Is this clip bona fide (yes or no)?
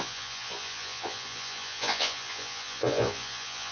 no